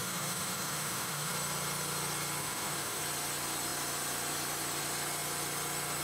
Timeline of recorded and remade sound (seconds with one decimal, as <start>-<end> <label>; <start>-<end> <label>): 0.0-1.3 remade; 1.3-2.4 recorded; 2.4-3.0 remade; 3.0-6.0 recorded